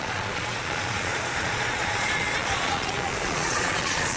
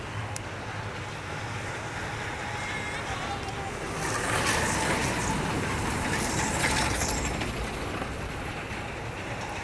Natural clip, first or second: second